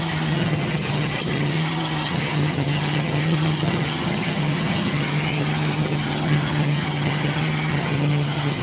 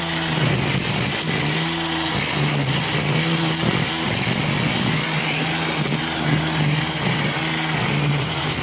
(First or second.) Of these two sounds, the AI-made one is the first